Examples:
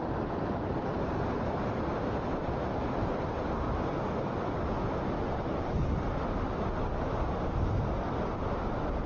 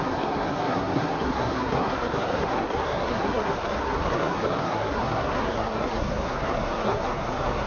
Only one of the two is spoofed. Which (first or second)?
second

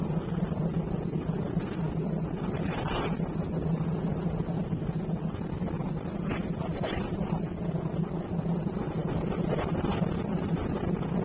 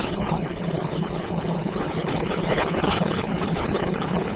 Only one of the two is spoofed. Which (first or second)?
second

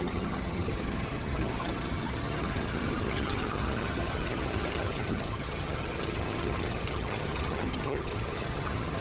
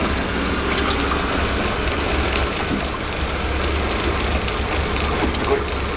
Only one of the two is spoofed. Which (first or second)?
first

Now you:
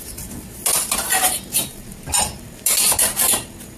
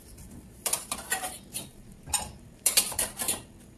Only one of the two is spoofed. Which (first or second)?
second